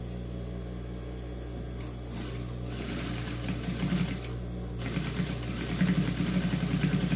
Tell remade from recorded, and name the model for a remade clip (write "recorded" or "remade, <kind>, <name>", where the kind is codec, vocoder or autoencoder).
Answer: recorded